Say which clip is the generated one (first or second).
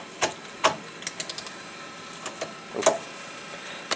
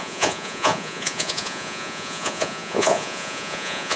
second